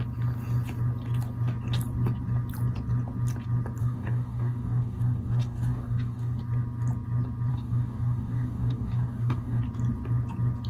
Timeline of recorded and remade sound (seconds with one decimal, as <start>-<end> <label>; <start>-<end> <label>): 0.0-3.8 recorded; 3.8-6.4 remade; 6.4-7.5 recorded; 7.5-9.6 remade; 9.6-10.7 recorded

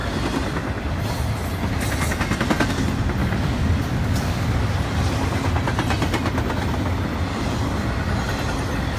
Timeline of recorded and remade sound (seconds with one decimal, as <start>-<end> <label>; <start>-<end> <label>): 0.0-3.2 recorded; 3.2-4.7 remade; 4.7-9.0 recorded

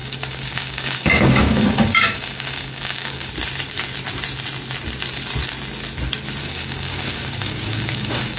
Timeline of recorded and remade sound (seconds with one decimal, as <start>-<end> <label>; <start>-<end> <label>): 0.0-3.3 remade; 3.3-6.4 recorded; 6.4-8.4 remade

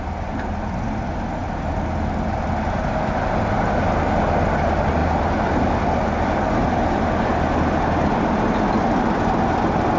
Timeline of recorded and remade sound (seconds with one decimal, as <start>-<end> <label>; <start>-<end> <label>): 0.0-10.0 recorded

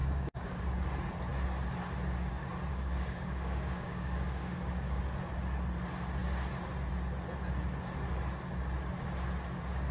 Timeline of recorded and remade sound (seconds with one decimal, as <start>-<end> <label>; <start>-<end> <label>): 0.0-0.6 remade; 0.6-2.7 recorded; 2.7-5.0 remade; 5.0-9.9 recorded